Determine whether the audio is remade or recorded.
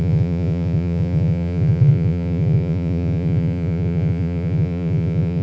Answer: remade